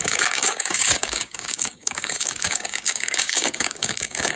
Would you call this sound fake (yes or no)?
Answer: yes